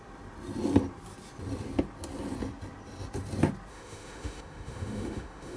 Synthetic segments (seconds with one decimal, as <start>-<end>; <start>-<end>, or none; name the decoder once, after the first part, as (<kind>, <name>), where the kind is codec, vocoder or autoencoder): 3.7-5.6 (autoencoder, DAC-VAE)

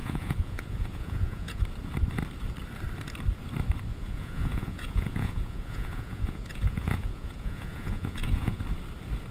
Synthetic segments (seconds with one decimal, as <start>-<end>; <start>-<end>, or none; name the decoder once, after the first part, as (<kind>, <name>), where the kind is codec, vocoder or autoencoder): 0.0-1.6 (vocoder, Vocos); 3.9-8.6

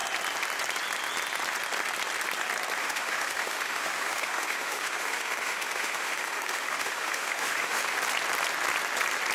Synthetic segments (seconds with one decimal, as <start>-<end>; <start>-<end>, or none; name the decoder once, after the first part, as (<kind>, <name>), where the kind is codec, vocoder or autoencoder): 2.8-8.0 (autoencoder, DAC-VAE)

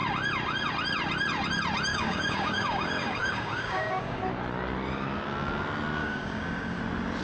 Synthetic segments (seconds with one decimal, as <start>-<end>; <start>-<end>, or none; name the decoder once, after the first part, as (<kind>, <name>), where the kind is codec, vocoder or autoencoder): 1.9-4.2 (codec, DAC); 6.0-6.8

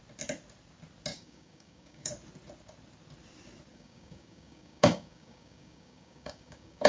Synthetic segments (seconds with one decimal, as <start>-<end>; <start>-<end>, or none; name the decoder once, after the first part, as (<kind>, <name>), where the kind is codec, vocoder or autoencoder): 1.1-2.1 (codec, DAC); 3.7-6.9

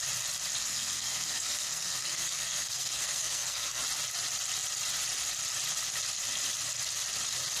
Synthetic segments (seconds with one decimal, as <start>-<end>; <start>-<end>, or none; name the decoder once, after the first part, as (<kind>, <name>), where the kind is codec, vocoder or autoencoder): 0.6-3.8 (codec, SNAC)